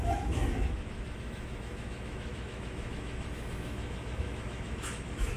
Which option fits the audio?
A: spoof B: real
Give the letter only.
A